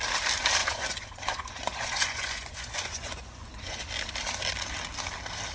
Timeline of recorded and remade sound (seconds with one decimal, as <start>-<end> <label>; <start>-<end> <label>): 0.0-0.6 recorded; 0.6-3.9 remade; 3.9-5.5 recorded